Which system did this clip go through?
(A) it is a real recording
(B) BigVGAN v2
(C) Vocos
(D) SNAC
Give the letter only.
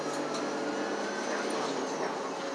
A